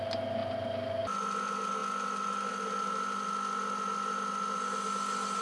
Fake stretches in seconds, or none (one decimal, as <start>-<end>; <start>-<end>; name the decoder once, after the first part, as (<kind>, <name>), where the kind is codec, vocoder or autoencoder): none